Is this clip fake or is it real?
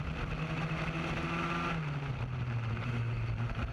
real